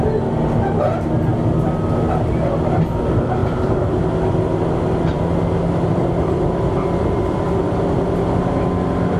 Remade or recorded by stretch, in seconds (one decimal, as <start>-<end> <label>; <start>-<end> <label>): 0.0-3.4 recorded; 3.4-4.0 remade; 4.0-5.1 recorded; 5.1-7.6 remade; 7.6-9.2 recorded

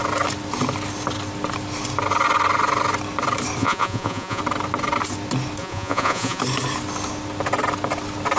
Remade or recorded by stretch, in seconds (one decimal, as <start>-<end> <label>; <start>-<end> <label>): 0.0-3.6 recorded; 3.6-4.4 remade; 4.4-5.6 recorded; 5.6-6.4 remade; 6.4-8.4 recorded

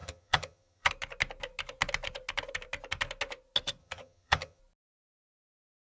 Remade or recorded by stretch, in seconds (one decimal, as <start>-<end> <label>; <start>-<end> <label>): 0.0-0.9 remade; 0.9-3.8 recorded; 3.8-4.6 remade; 4.6-5.9 recorded

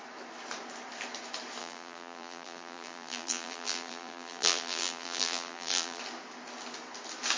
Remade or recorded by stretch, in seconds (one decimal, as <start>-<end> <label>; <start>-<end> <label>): 0.0-1.6 recorded; 1.6-6.0 remade; 6.0-7.4 recorded

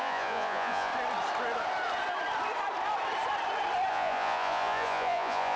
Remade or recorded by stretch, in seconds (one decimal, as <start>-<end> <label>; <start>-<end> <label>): 0.0-0.9 remade; 0.9-3.9 recorded; 3.9-5.6 remade

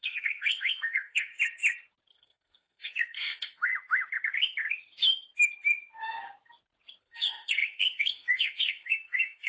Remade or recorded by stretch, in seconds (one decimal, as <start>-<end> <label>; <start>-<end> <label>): 0.0-1.3 remade; 1.3-2.1 recorded; 2.1-3.7 remade; 3.7-7.0 recorded; 7.0-9.5 remade

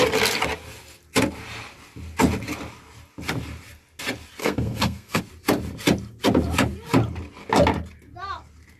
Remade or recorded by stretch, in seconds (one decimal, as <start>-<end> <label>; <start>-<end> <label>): 0.0-4.4 recorded; 4.4-5.2 remade; 5.2-8.8 recorded

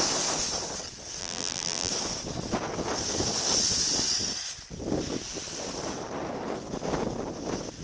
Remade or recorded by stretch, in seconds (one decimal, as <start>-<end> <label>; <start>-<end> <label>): 0.0-1.2 recorded; 1.2-1.9 remade; 1.9-7.8 recorded